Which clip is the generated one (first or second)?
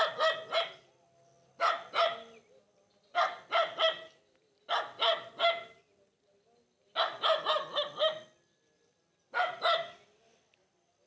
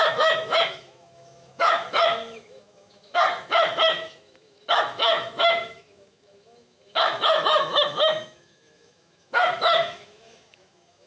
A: second